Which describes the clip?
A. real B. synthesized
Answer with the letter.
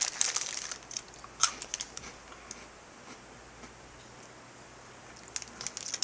A